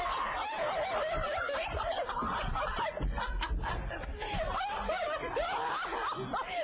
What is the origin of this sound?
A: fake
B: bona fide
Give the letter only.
B